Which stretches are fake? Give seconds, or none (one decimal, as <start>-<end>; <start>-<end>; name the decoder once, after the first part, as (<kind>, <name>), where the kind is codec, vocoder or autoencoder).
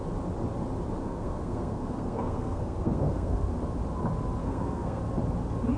1.0-3.5 (codec, SNAC); 4.4-5.0